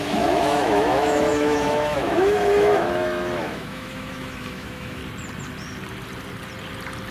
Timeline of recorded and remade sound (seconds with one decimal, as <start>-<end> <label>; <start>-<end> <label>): 0.0-5.0 remade; 5.0-7.1 recorded